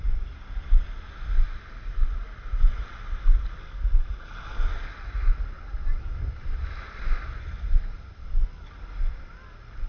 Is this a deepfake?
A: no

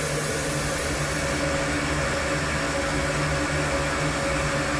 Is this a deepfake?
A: no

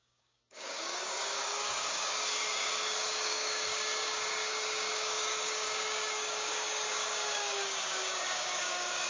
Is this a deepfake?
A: yes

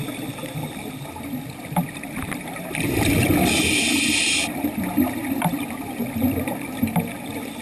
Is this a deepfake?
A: no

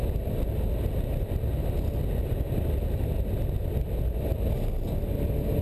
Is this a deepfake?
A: no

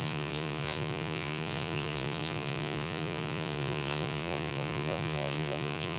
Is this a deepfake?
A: yes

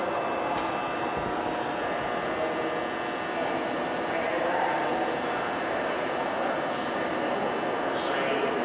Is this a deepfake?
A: no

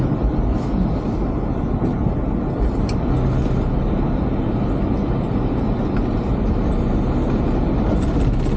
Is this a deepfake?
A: no